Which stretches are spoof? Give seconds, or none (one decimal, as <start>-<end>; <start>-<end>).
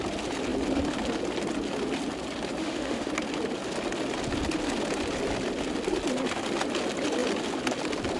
2.6-3.1